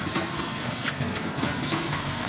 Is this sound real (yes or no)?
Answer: no